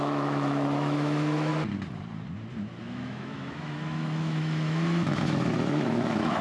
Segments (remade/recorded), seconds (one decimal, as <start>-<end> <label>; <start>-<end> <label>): 0.0-1.5 remade; 1.5-2.8 recorded; 2.8-6.4 remade

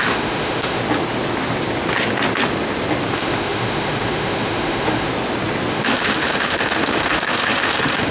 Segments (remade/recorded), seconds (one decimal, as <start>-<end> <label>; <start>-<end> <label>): 0.0-0.8 remade; 0.8-3.1 recorded; 3.1-5.1 remade; 5.1-5.7 recorded; 5.7-8.1 remade

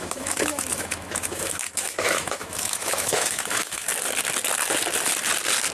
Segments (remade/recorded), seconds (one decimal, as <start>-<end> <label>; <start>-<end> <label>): 0.0-3.9 remade; 3.9-5.7 recorded

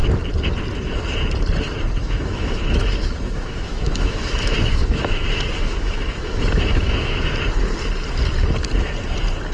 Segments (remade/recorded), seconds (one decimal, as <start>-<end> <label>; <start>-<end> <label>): 0.0-2.0 recorded; 2.0-7.2 remade; 7.2-9.5 recorded

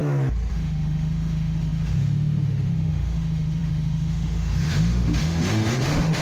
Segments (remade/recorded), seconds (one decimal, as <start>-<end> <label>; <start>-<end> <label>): 0.0-0.5 recorded; 0.5-6.2 remade

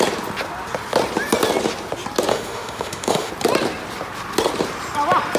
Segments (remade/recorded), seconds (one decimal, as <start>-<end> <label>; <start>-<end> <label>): 0.0-2.3 recorded; 2.3-3.3 remade; 3.3-5.4 recorded

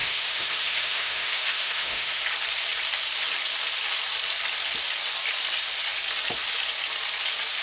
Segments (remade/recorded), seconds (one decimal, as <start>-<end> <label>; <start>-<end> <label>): 0.0-2.2 remade; 2.2-7.6 recorded

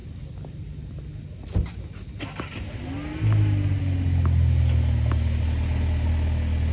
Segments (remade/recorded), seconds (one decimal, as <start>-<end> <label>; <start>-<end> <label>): 0.0-6.7 recorded